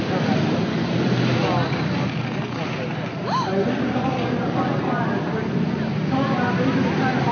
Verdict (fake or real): real